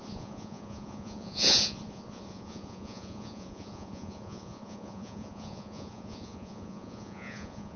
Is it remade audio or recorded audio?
remade